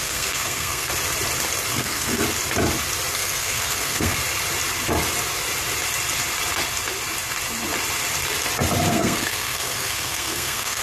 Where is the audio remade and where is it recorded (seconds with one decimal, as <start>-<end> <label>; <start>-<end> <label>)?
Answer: 0.0-0.9 remade; 0.9-1.7 recorded; 1.7-2.2 remade; 2.2-3.1 recorded; 3.1-4.2 remade; 4.2-8.9 recorded; 8.9-10.8 remade